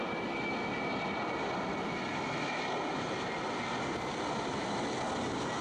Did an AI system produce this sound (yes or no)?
no